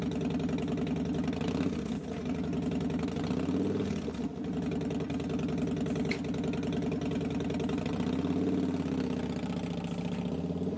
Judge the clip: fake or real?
real